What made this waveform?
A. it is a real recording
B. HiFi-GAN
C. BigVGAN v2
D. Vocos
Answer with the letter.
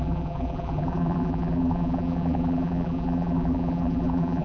C